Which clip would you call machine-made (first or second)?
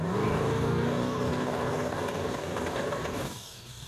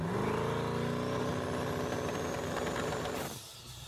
first